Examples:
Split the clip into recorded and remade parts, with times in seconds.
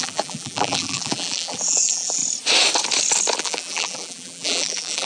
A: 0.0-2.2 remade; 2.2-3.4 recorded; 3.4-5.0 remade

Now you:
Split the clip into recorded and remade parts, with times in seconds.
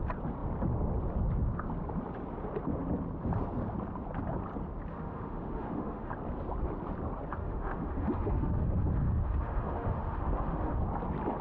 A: 0.0-4.9 recorded; 4.9-6.1 remade; 6.1-7.4 recorded; 7.4-10.8 remade; 10.8-11.4 recorded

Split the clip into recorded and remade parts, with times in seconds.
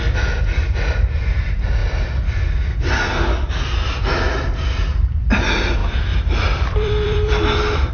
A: 0.0-5.8 recorded; 5.8-7.9 remade